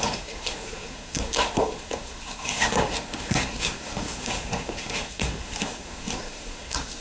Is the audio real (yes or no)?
no